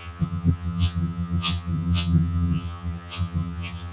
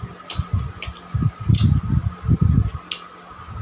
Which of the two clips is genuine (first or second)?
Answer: second